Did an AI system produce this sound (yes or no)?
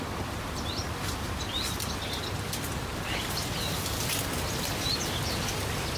no